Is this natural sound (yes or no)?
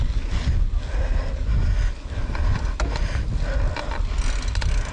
yes